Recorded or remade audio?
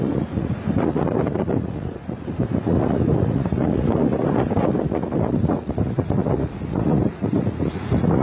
remade